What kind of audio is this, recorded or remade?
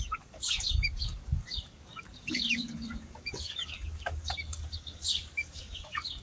remade